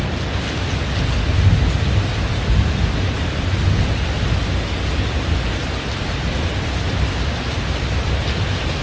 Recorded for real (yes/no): yes